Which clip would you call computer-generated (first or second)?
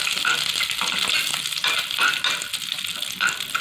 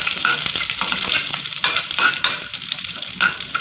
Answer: second